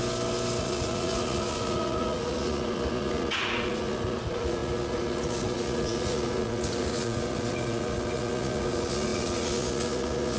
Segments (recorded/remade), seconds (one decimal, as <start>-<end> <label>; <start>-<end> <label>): 0.0-0.6 recorded; 0.6-10.4 remade